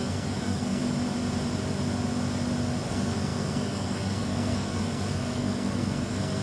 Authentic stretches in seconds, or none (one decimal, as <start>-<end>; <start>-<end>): 0.8-2.9